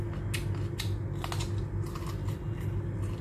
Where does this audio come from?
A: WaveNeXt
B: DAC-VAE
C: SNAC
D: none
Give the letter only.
D